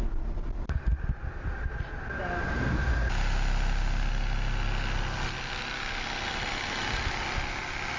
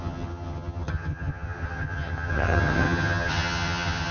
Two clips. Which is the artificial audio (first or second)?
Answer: second